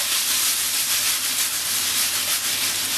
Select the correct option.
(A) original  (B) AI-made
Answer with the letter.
A